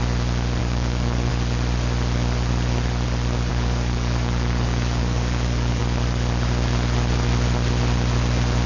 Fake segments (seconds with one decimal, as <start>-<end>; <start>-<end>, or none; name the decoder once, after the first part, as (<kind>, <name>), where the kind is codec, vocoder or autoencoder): 0.6-1.3 (codec, DAC); 3.5-5.8